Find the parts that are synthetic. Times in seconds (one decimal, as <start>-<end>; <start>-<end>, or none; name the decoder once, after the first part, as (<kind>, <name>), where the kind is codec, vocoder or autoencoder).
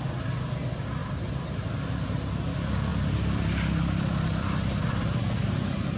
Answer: 2.9-5.2 (vocoder, BigVGAN v2)